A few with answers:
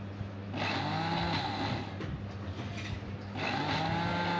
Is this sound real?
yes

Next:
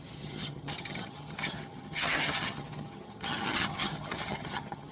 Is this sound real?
no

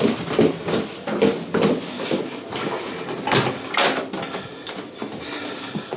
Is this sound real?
yes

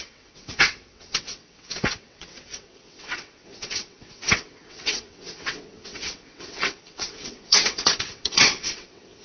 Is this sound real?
no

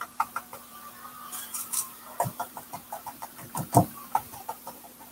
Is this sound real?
no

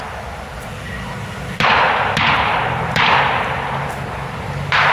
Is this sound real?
no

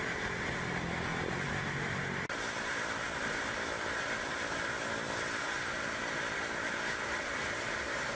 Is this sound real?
yes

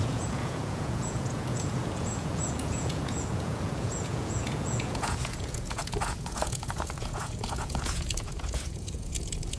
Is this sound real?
no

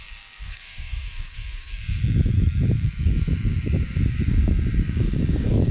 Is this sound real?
no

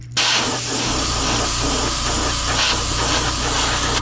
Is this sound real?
yes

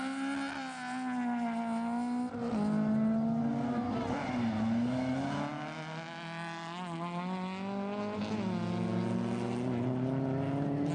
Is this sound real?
yes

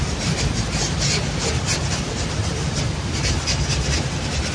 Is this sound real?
yes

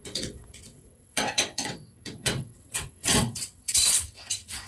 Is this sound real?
no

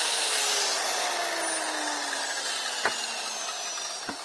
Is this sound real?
yes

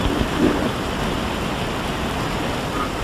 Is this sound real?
yes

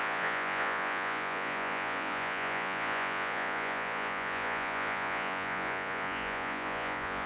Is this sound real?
no